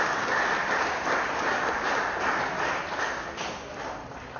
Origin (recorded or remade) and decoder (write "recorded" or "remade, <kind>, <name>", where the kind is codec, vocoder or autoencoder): recorded